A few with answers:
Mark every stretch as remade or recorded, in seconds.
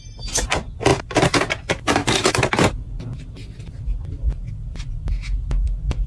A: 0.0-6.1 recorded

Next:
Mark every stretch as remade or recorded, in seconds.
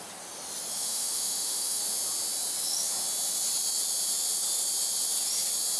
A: 0.0-0.7 recorded; 0.7-1.8 remade; 1.8-5.8 recorded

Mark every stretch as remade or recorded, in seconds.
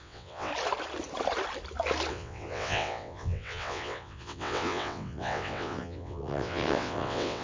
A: 0.0-0.5 remade; 0.5-2.1 recorded; 2.1-7.4 remade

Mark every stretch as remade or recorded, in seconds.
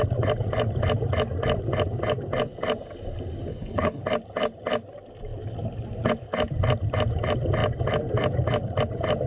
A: 0.0-3.5 recorded; 3.5-4.0 remade; 4.0-9.3 recorded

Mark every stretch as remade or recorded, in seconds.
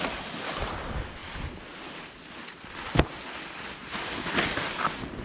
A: 0.0-5.2 recorded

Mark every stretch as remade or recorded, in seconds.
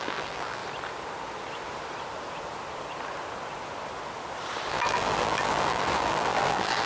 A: 0.0-0.6 remade; 0.6-4.7 recorded; 4.7-6.9 remade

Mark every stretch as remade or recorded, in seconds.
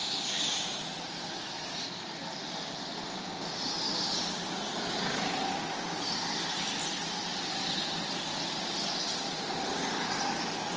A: 0.0-10.8 recorded